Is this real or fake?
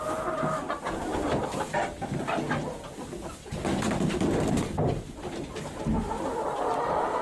real